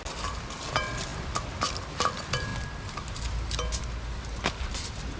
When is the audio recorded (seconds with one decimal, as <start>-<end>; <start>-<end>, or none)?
0.0-5.2